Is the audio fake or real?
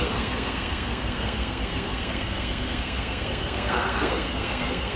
fake